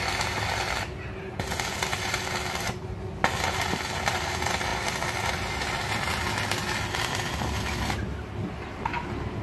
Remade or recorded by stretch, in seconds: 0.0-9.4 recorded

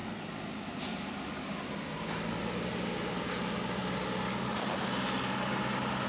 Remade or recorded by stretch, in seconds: 0.0-6.1 recorded

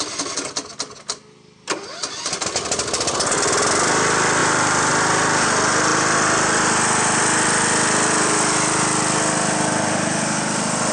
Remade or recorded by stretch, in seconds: 0.0-4.4 recorded; 4.4-4.9 remade; 4.9-10.9 recorded

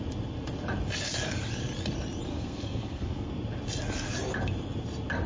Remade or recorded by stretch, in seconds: 0.0-2.3 recorded; 2.3-3.3 remade; 3.3-5.3 recorded

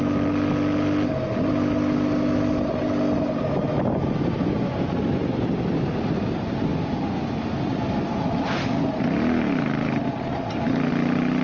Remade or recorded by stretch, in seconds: 0.0-3.7 recorded; 3.7-4.5 remade; 4.5-11.4 recorded